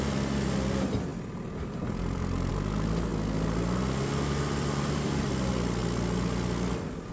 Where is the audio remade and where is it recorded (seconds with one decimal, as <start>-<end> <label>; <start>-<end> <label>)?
0.0-3.1 remade; 3.1-4.5 recorded; 4.5-5.8 remade; 5.8-7.1 recorded